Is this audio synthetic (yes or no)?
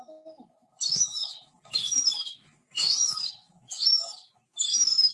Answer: yes